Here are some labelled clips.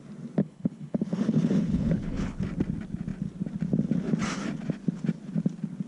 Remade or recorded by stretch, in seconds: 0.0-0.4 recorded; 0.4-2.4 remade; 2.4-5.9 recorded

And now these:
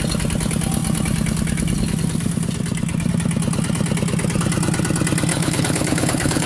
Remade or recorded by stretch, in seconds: 0.0-5.3 recorded; 5.3-6.5 remade

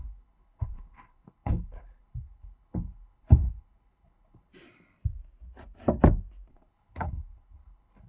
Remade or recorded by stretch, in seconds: 0.0-4.5 remade; 4.5-6.5 recorded; 6.5-8.1 remade

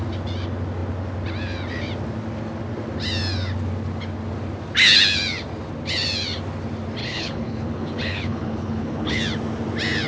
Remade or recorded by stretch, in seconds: 0.0-7.0 recorded; 7.0-9.2 remade; 9.2-10.1 recorded

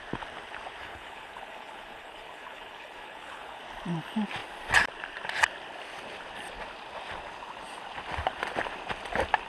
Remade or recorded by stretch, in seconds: 0.0-0.8 recorded; 0.8-3.6 remade; 3.6-9.5 recorded

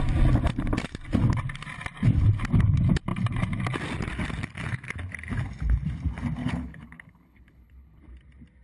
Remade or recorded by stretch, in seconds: 0.0-6.4 recorded; 6.4-8.0 remade; 8.0-8.6 recorded

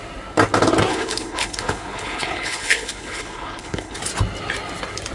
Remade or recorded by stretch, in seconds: 0.0-0.9 recorded; 0.9-4.0 remade; 4.0-5.1 recorded

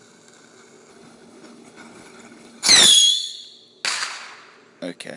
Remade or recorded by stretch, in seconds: 0.0-0.9 recorded; 0.9-2.7 remade; 2.7-5.2 recorded